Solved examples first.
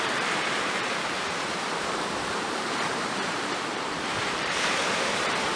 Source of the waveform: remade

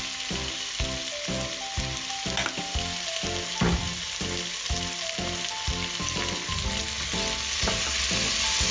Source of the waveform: recorded